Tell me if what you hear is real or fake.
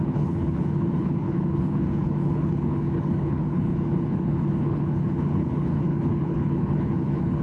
fake